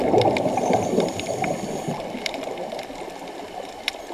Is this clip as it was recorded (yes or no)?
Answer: no